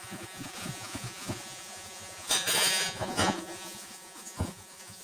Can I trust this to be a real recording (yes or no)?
no